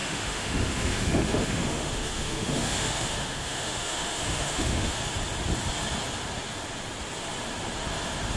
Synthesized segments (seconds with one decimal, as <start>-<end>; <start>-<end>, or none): 0.0-5.0

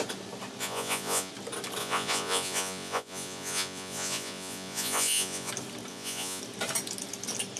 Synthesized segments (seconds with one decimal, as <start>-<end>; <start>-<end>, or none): 0.6-1.3; 1.8-5.5; 5.9-6.4